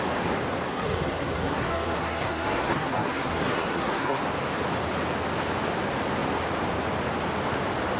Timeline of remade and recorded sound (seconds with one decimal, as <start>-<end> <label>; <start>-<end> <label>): 0.0-0.7 recorded; 0.7-4.2 remade; 4.2-8.0 recorded